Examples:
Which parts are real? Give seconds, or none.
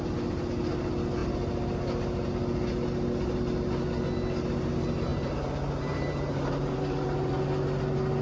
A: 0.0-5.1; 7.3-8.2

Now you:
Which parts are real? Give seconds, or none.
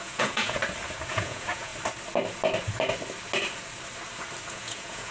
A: 0.6-1.1; 1.7-4.5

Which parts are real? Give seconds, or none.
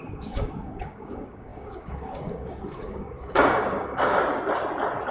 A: 4.2-5.1